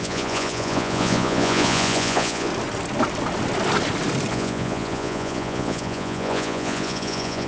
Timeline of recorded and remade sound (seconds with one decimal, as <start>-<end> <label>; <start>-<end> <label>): 0.0-2.5 remade; 2.5-4.3 recorded; 4.3-7.5 remade